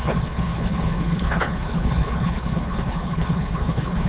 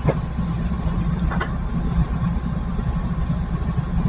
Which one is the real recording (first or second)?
second